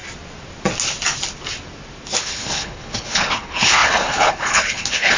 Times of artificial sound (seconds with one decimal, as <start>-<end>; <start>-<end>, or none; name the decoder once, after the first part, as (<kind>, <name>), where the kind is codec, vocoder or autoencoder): 2.2-5.2 (codec, HILCodec)